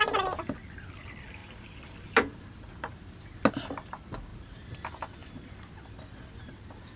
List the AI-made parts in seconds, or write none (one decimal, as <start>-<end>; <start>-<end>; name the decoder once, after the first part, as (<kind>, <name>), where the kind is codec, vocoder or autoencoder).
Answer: none